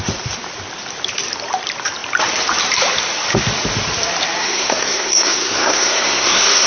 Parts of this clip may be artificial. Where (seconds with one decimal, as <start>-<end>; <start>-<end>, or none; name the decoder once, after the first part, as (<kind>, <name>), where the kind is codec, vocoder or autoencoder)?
4.4-6.7 (codec, SNAC)